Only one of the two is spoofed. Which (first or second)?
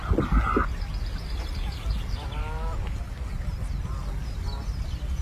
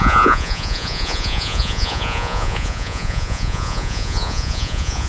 second